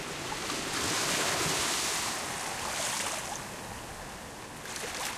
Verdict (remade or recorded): recorded